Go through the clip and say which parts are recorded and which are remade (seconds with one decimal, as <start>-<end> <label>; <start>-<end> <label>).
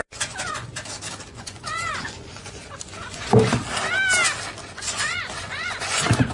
0.0-0.7 remade; 0.7-1.3 recorded; 1.3-3.6 remade; 3.6-4.6 recorded; 4.6-6.3 remade